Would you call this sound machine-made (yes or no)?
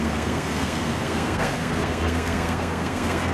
yes